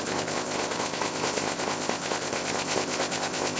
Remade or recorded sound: remade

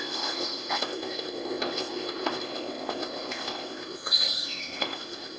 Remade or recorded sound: remade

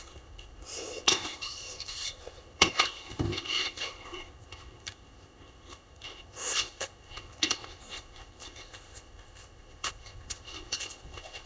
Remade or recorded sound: remade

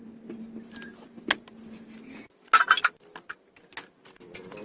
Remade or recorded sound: recorded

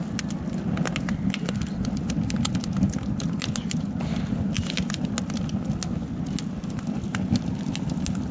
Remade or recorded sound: recorded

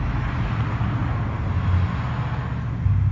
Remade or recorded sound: recorded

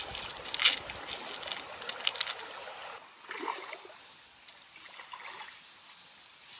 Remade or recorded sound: recorded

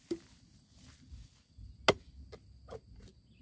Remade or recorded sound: recorded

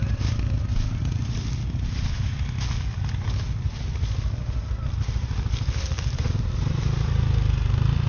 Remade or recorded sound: recorded